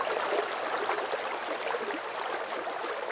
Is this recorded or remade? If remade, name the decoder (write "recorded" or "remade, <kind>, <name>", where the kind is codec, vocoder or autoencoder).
recorded